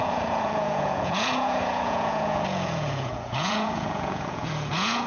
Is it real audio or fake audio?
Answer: fake